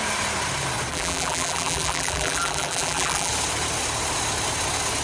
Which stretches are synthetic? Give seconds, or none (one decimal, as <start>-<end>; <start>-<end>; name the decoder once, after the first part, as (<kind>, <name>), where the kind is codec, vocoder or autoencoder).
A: 0.9-3.3 (vocoder, BigVGAN v2)